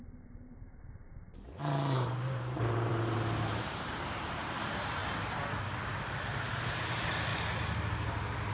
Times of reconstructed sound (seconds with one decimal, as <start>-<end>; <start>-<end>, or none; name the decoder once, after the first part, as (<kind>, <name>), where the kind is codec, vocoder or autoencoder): 0.0-5.0 (vocoder, BigVGAN v2); 6.3-7.3

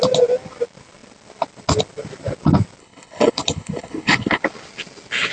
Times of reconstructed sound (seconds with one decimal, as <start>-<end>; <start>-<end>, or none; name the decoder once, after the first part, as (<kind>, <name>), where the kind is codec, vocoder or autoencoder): 2.8-4.4 (codec, HILCodec)

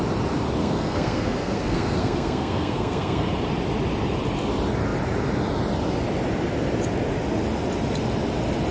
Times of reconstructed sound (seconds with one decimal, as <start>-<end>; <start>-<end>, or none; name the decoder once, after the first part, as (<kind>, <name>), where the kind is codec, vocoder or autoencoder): 0.6-3.3 (codec, SNAC)

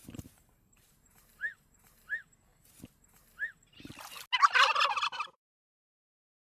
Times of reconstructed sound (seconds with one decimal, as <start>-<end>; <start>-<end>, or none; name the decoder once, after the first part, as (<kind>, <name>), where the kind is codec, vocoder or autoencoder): 0.0-2.5 (vocoder, BigVGAN v2)

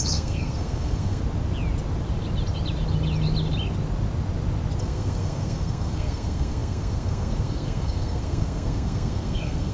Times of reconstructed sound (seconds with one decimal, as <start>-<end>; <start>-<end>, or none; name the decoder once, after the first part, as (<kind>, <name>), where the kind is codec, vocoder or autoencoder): 0.0-1.2 (codec, SNAC); 4.8-9.7